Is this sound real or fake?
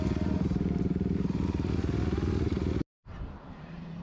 real